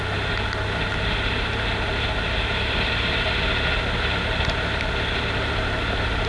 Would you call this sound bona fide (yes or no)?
yes